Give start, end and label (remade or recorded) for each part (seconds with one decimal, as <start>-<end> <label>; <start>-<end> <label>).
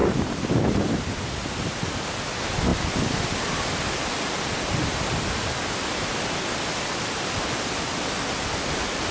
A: 0.0-2.0 remade; 2.0-9.1 recorded